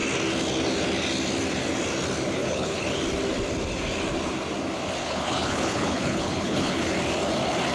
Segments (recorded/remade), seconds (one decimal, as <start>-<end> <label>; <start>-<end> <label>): 0.0-2.4 recorded; 2.4-3.0 remade; 3.0-5.0 recorded; 5.0-6.8 remade; 6.8-7.7 recorded